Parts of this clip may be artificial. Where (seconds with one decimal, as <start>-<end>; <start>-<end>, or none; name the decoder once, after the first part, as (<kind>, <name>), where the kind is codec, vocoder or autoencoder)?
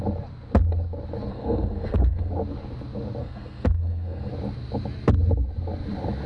1.3-2.3 (codec, SNAC); 3.2-4.3